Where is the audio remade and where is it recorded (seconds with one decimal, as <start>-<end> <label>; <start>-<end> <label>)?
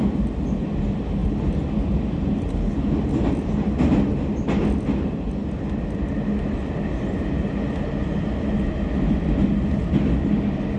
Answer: 0.0-10.8 recorded